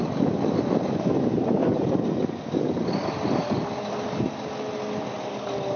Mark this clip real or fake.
real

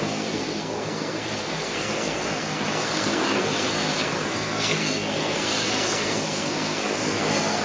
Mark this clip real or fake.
fake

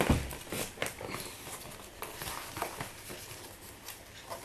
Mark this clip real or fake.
real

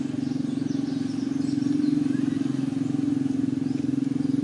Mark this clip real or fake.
real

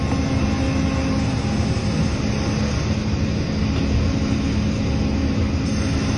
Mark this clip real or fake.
real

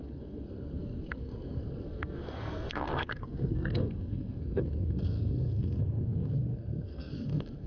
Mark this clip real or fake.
fake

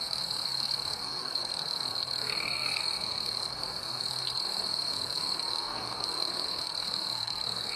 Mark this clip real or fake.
fake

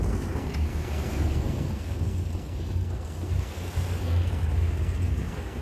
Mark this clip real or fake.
fake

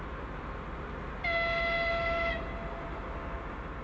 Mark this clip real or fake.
real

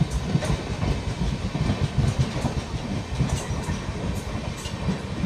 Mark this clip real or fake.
real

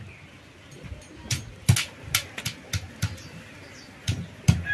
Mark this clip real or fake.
real